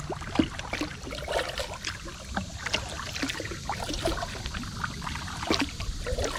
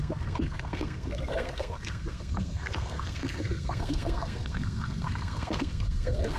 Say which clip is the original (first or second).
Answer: first